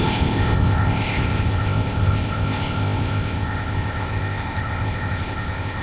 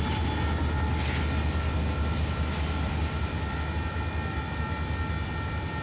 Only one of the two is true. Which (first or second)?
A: second